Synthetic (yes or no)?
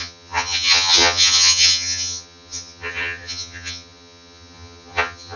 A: yes